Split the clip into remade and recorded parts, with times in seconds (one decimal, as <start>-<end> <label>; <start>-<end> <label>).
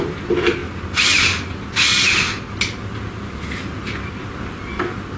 0.0-5.2 recorded